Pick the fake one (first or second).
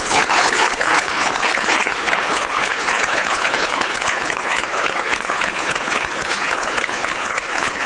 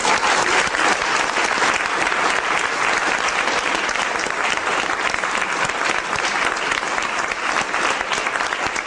first